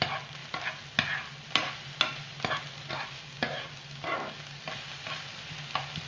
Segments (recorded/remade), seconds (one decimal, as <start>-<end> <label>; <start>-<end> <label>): 0.0-6.1 recorded